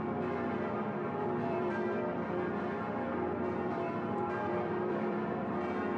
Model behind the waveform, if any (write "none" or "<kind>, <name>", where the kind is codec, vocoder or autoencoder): vocoder, BigVGAN v2